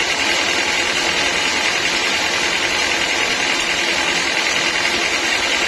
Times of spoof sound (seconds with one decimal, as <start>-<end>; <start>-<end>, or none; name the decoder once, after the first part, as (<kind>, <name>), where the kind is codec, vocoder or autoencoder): none

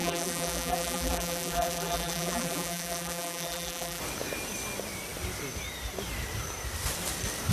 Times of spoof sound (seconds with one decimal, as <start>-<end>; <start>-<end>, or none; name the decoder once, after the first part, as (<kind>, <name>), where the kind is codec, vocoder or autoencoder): 0.0-4.0 (vocoder, BigVGAN v2)

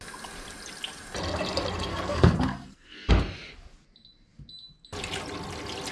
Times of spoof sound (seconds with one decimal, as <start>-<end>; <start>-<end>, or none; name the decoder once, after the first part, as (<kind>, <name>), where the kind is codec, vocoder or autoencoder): 1.9-3.1 (codec, SNAC)

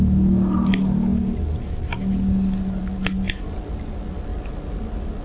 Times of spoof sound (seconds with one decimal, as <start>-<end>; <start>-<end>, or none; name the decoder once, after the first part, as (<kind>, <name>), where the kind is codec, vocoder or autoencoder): none